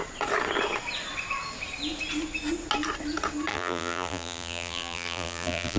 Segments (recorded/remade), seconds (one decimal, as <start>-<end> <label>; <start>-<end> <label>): 0.0-3.5 recorded; 3.5-5.8 remade